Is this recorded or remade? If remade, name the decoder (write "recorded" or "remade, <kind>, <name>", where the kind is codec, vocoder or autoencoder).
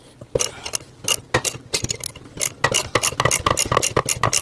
recorded